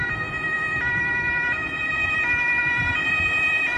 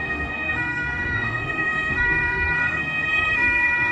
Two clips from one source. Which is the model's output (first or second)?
second